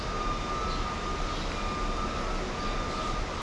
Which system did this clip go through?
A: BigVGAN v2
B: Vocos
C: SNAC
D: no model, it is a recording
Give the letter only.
D